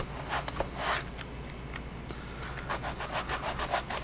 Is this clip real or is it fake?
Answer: real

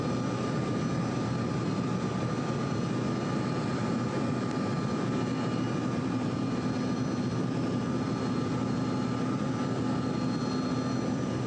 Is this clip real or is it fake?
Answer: fake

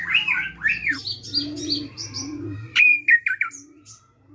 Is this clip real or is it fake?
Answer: fake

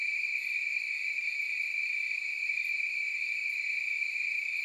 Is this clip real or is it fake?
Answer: fake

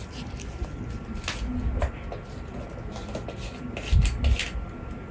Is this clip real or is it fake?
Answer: real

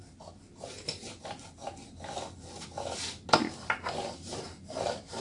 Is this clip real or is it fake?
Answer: real